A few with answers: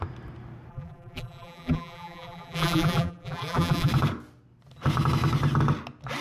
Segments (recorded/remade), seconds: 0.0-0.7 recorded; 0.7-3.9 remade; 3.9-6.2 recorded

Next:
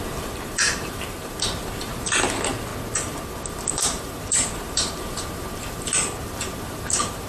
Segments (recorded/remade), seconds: 0.0-2.7 remade; 2.7-3.7 recorded; 3.7-7.3 remade

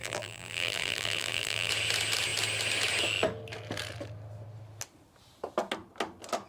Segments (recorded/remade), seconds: 0.0-1.7 remade; 1.7-6.5 recorded

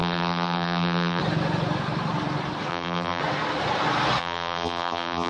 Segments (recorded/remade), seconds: 0.0-1.2 remade; 1.2-2.7 recorded; 2.7-3.2 remade; 3.2-4.2 recorded; 4.2-5.3 remade

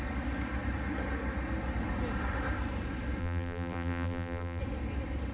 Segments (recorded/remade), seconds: 0.0-3.2 recorded; 3.2-4.6 remade; 4.6-5.3 recorded

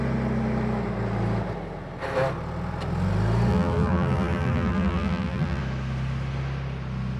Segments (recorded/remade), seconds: 0.0-3.5 recorded; 3.5-5.6 remade; 5.6-7.2 recorded

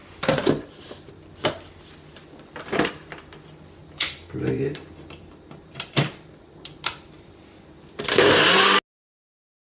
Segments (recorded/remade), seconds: 0.0-1.1 remade; 1.1-3.8 recorded; 3.8-7.2 remade; 7.2-9.8 recorded

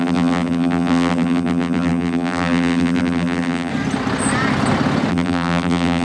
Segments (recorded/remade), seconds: 0.0-3.7 remade; 3.7-5.1 recorded; 5.1-6.0 remade